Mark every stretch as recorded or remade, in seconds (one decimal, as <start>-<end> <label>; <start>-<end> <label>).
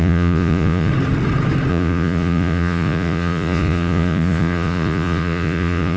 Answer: 0.0-0.9 remade; 0.9-1.7 recorded; 1.7-6.0 remade